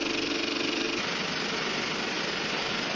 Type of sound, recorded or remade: recorded